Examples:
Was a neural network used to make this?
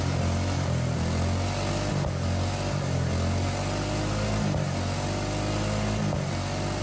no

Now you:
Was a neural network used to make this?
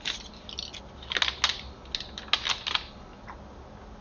no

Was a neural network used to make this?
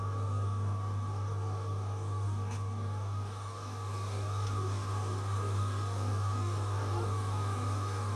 yes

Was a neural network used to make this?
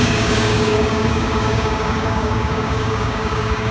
yes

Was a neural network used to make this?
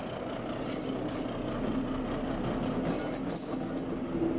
no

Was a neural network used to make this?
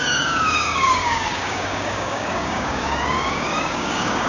yes